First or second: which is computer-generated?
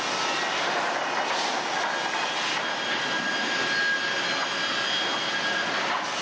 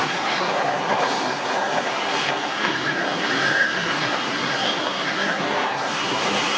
second